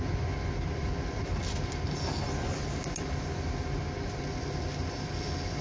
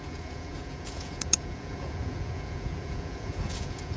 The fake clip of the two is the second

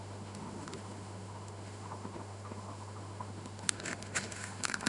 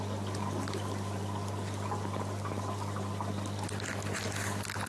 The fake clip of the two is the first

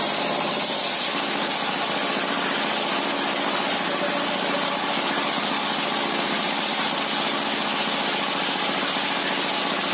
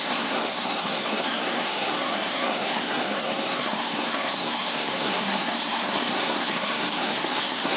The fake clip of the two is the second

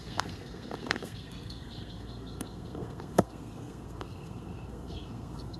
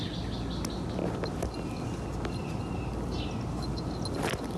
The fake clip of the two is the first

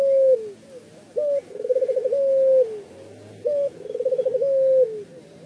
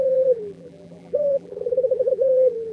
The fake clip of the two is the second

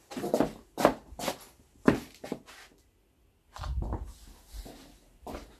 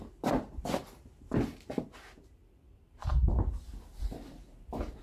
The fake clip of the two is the second